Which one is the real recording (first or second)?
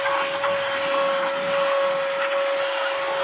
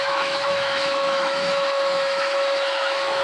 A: first